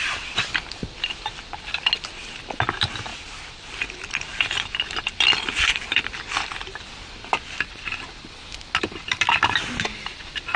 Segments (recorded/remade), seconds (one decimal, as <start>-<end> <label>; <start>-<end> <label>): 0.0-0.8 recorded; 0.8-1.9 remade; 1.9-3.1 recorded; 3.1-8.0 remade; 8.0-10.6 recorded